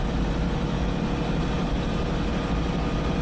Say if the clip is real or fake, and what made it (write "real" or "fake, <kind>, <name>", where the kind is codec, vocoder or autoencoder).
real